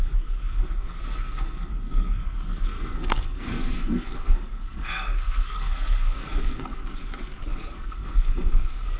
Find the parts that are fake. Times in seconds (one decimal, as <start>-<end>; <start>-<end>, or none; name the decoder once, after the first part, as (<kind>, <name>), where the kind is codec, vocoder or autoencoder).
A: 0.0-9.0 (codec, SNAC)